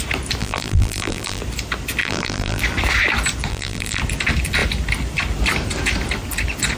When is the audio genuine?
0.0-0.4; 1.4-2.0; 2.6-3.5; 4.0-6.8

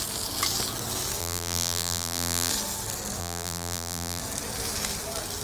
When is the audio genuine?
0.0-1.2; 2.5-3.2; 4.2-5.4

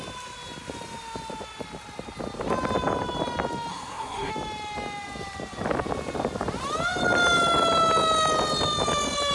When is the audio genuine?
0.0-3.7; 4.3-9.3